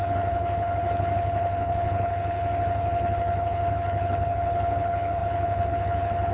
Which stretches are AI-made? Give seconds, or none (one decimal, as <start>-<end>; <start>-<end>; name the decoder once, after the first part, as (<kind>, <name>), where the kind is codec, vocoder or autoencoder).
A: 0.0-6.3 (codec, HILCodec)